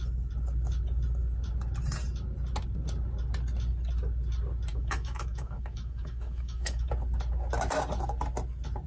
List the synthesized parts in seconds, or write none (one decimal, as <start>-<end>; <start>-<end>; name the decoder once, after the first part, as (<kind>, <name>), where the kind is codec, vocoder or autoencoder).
4.7-6.9 (autoencoder, DAC-VAE)